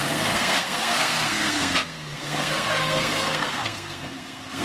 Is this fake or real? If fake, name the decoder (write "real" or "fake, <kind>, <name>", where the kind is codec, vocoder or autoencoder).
fake, codec, SNAC